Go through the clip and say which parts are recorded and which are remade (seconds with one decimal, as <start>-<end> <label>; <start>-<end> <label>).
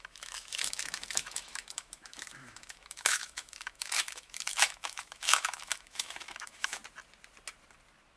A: 0.0-6.8 remade; 6.8-8.2 recorded